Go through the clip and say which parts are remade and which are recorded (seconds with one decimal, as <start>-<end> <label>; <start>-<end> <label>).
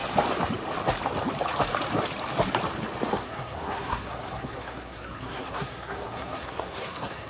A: 0.0-3.1 recorded; 3.1-7.3 remade